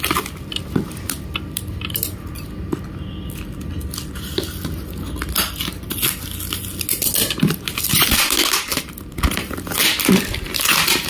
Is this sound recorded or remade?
recorded